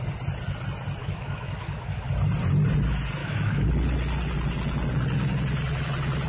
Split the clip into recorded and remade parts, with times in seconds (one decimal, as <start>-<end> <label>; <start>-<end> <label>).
0.0-1.0 recorded; 1.0-2.1 remade; 2.1-3.2 recorded; 3.2-3.7 remade; 3.7-6.3 recorded

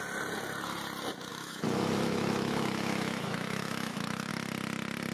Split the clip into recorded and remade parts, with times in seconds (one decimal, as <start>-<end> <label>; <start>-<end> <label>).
0.0-1.3 recorded; 1.3-4.3 remade; 4.3-5.1 recorded

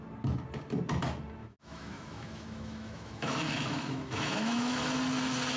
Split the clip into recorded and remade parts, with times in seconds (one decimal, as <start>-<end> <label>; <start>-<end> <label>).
0.0-1.4 recorded; 1.4-4.8 remade; 4.8-5.6 recorded

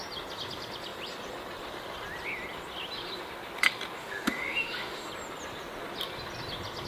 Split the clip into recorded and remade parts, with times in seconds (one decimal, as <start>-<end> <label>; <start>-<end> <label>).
0.0-4.0 recorded; 4.0-5.1 remade; 5.1-6.9 recorded

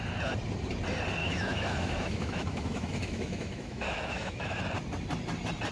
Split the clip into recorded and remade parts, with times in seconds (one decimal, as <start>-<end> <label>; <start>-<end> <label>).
0.0-1.2 recorded; 1.2-4.6 remade; 4.6-5.7 recorded